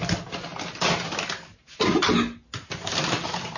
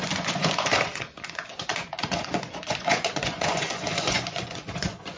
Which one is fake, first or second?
second